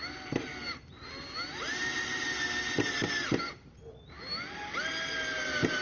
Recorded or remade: recorded